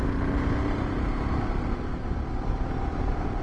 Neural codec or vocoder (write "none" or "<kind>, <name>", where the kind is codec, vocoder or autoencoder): none